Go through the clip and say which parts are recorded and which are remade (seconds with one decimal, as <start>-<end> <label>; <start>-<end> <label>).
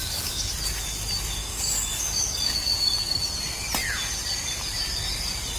0.0-0.5 remade; 0.5-1.4 recorded; 1.4-3.2 remade; 3.2-5.6 recorded